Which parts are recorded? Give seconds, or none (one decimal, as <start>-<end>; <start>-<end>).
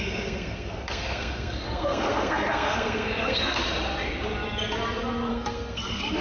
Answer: 3.6-5.3